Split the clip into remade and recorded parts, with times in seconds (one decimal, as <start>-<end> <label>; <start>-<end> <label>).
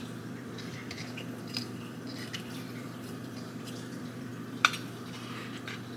0.0-0.8 remade; 0.8-1.4 recorded; 1.4-4.3 remade; 4.3-6.0 recorded